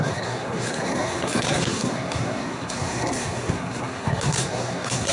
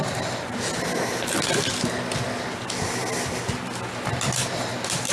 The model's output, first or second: first